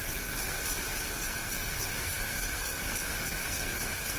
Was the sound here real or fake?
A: fake